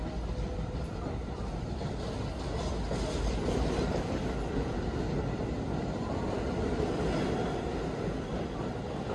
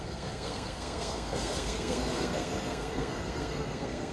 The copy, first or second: second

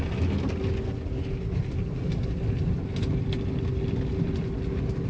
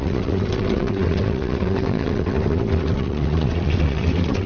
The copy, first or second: second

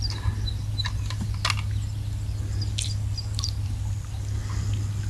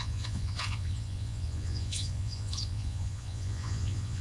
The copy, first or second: second